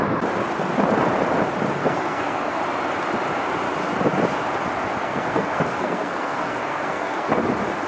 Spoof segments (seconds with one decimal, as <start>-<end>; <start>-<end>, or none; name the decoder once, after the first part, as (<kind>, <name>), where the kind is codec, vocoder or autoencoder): 1.8-2.6 (codec, SNAC); 5.0-7.3